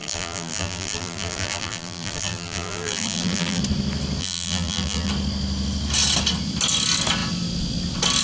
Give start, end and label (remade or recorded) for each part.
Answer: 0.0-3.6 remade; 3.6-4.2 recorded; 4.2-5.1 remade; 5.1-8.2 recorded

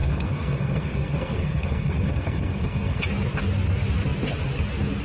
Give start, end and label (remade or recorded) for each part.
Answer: 0.0-3.0 remade; 3.0-5.0 recorded

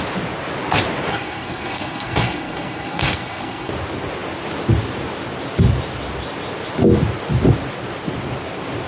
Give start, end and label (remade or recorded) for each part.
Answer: 0.0-1.1 recorded; 1.1-3.7 remade; 3.7-8.9 recorded

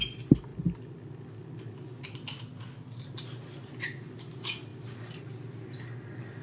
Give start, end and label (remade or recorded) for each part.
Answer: 0.0-6.4 recorded

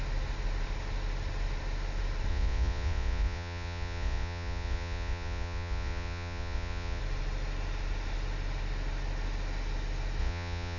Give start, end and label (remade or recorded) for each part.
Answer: 0.0-2.3 recorded; 2.3-7.0 remade; 7.0-10.2 recorded; 10.2-10.8 remade

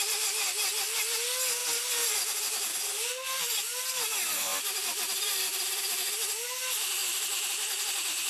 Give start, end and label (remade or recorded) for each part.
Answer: 0.0-1.6 recorded; 1.6-2.7 remade; 2.7-7.0 recorded; 7.0-7.5 remade; 7.5-8.3 recorded